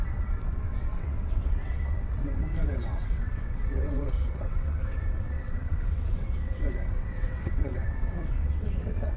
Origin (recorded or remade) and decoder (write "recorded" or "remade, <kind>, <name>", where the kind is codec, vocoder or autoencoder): remade, vocoder, WaveNeXt